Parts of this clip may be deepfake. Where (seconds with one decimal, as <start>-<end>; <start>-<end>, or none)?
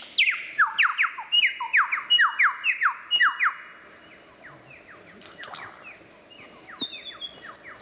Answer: none